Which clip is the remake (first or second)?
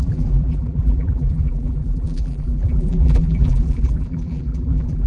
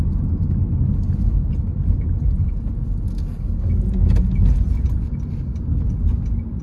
first